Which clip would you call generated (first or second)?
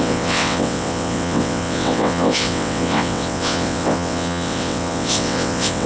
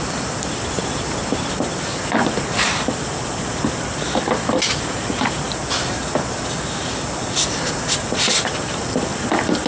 first